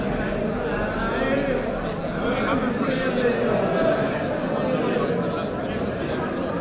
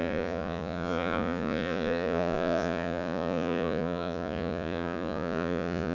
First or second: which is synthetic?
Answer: second